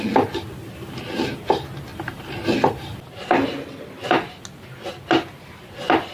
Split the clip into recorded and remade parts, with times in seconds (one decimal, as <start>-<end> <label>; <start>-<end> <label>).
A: 0.0-6.1 recorded